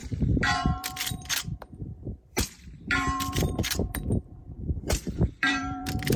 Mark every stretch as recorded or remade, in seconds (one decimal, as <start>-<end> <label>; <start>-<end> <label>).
0.0-6.2 remade

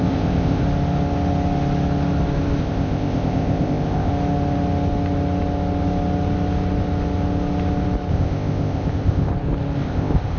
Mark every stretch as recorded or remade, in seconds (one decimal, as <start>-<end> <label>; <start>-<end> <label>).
0.0-0.6 remade; 0.6-2.6 recorded; 2.6-4.1 remade; 4.1-8.1 recorded; 8.1-9.3 remade; 9.3-9.8 recorded; 9.8-10.4 remade

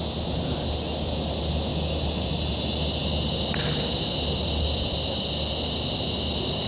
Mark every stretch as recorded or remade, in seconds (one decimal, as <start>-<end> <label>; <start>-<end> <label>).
0.0-6.7 recorded

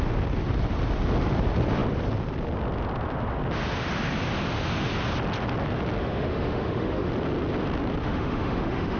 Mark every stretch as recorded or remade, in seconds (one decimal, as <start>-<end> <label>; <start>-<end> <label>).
0.0-6.0 recorded; 6.0-7.1 remade; 7.1-8.0 recorded; 8.0-9.0 remade

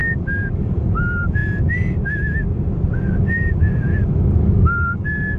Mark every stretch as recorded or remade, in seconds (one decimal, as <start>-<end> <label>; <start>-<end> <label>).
0.0-1.0 remade; 1.0-3.9 recorded; 3.9-5.4 remade

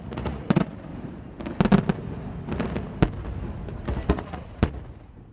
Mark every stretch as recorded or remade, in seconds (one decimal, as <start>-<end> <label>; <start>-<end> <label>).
0.0-0.9 remade; 0.9-4.1 recorded; 4.1-5.3 remade